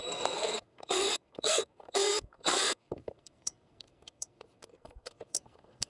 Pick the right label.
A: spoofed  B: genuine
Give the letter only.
A